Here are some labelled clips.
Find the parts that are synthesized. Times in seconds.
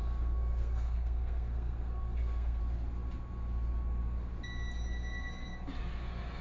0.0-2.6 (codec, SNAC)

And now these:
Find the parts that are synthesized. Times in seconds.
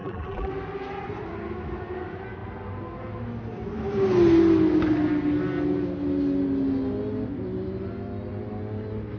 0.0-0.5 (vocoder, BigVGAN v2)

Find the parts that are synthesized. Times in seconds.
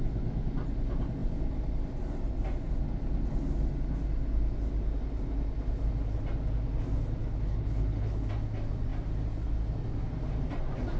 7.2-8.3 (codec, HILCodec)